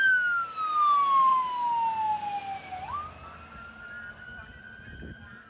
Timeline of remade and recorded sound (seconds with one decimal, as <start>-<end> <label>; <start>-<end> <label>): 0.0-5.5 recorded